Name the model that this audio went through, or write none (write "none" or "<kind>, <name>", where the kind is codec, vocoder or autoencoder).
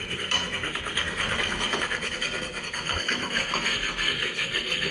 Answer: codec, SNAC